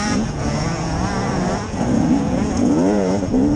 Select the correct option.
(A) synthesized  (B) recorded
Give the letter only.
A